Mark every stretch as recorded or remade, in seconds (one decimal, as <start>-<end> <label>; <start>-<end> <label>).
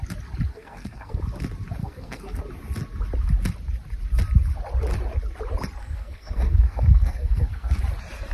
0.0-0.5 recorded; 0.5-1.2 remade; 1.2-1.8 recorded; 1.8-2.4 remade; 2.4-5.8 recorded; 5.8-7.8 remade; 7.8-8.3 recorded